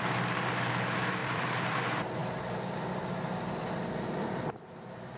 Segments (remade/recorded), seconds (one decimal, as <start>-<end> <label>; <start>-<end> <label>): 0.0-1.2 recorded; 1.2-1.8 remade; 1.8-5.2 recorded